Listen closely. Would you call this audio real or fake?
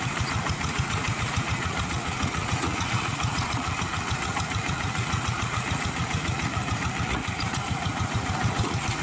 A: fake